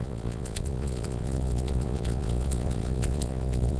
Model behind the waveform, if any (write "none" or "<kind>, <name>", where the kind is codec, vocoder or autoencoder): vocoder, Vocos